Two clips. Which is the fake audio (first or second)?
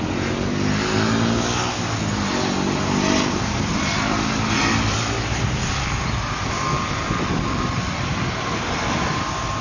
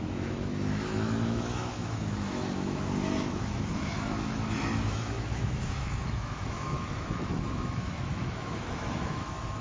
second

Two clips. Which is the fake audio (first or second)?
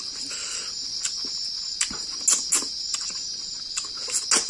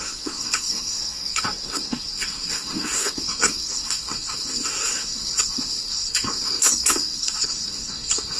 second